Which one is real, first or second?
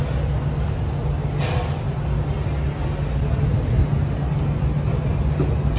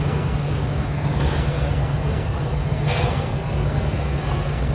first